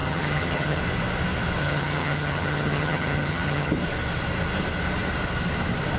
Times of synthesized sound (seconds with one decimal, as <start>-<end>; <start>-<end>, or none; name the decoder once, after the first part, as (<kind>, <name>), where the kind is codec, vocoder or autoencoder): 0.0-0.8 (vocoder, HiFi-GAN); 1.6-3.7